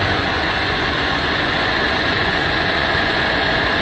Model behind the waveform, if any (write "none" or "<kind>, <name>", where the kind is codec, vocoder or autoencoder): vocoder, Vocos